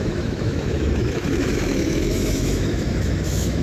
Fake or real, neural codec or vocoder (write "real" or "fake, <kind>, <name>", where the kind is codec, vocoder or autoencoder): fake, autoencoder, DAC-VAE